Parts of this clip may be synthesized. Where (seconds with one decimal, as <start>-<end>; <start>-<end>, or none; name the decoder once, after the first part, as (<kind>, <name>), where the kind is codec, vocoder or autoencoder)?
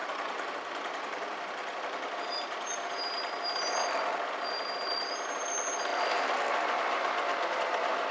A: 0.0-4.1 (vocoder, BigVGAN v2); 5.9-7.6